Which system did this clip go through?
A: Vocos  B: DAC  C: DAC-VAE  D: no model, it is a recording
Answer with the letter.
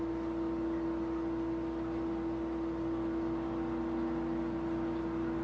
D